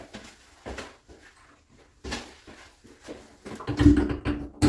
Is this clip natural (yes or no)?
yes